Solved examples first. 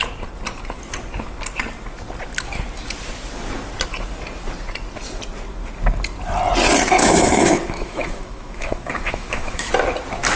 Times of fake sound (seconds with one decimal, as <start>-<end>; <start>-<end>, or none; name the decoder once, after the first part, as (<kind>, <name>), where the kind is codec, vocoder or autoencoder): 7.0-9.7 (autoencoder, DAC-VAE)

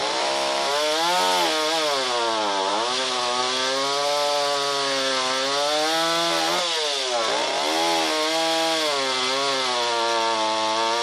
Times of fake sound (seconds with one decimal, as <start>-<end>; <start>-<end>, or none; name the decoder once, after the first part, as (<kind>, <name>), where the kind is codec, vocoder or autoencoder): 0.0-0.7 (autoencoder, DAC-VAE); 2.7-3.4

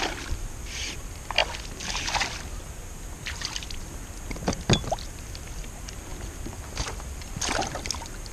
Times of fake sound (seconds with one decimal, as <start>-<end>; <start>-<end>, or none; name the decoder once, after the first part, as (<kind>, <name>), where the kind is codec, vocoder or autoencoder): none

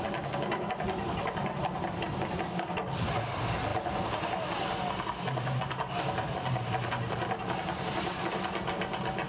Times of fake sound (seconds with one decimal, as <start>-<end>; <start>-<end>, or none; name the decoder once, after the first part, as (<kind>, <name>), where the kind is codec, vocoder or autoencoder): none

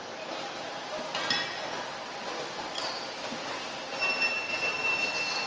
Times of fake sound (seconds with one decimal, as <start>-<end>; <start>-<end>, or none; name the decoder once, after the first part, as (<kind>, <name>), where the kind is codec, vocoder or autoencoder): none